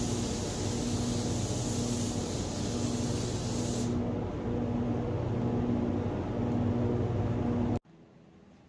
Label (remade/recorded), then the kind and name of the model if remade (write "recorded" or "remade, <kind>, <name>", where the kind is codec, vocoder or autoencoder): recorded